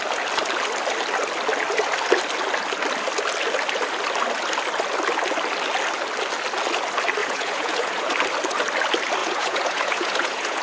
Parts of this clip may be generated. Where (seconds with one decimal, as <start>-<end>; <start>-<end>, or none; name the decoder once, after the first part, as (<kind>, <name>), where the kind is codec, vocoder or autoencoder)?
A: 7.2-8.1 (vocoder, Vocos); 9.2-10.6